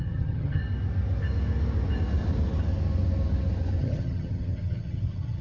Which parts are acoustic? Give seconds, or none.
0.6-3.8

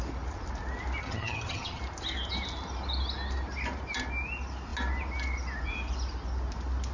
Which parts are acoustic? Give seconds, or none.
0.0-1.0; 1.8-6.9

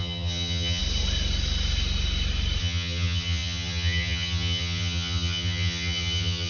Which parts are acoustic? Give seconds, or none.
0.8-2.6

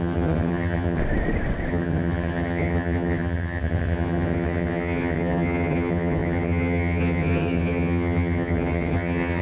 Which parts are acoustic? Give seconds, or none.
1.0-1.7

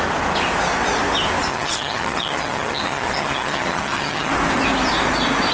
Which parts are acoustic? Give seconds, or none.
0.0-1.5; 4.3-5.5